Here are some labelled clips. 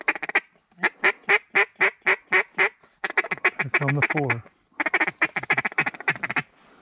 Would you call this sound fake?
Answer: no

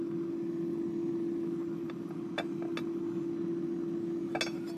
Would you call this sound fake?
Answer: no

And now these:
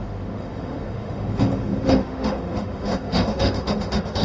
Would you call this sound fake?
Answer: yes